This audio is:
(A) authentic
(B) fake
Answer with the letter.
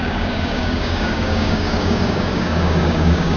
B